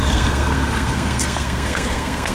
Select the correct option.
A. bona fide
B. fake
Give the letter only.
B